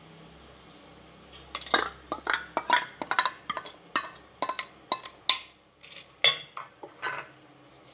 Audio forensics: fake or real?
real